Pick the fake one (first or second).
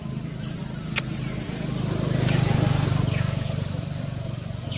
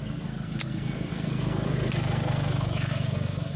second